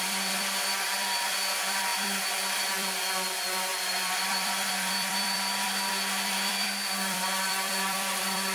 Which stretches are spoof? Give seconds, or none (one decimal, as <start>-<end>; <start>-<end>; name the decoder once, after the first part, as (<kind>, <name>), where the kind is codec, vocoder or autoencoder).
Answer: 0.0-8.5 (vocoder, BigVGAN v2)

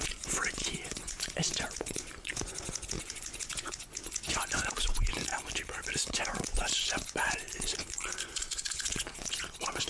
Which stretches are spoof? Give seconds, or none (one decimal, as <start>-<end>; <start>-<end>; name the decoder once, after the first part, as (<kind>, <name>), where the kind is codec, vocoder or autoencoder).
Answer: 0.0-5.3 (vocoder, Vocos); 6.2-9.9

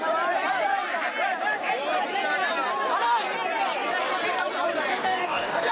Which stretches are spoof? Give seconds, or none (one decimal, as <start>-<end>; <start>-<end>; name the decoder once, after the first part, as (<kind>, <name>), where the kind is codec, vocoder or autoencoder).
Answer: 4.9-5.7 (codec, DAC)

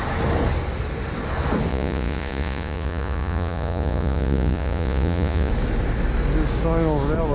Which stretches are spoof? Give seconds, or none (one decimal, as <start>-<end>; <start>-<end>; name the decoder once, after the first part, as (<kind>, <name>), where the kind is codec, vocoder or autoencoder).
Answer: 1.7-5.5 (vocoder, Vocos)